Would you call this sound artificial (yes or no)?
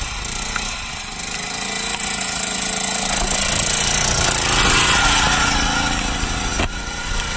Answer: no